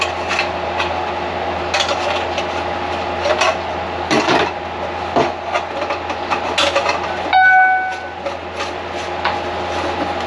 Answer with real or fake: real